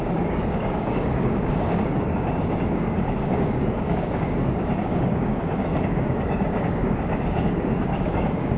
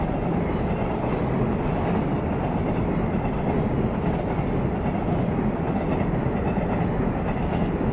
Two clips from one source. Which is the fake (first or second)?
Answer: first